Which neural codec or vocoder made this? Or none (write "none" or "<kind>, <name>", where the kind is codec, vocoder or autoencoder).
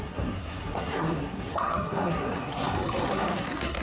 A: codec, SNAC